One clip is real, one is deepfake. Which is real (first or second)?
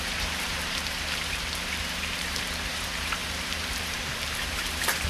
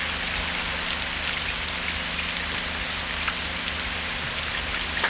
second